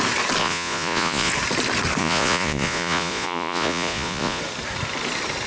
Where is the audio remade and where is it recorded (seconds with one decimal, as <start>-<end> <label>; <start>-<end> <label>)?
0.0-0.4 recorded; 0.4-1.3 remade; 1.3-2.0 recorded; 2.0-4.4 remade; 4.4-5.5 recorded